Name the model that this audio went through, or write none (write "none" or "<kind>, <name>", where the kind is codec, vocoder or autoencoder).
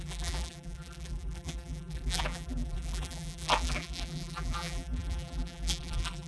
vocoder, BigVGAN v2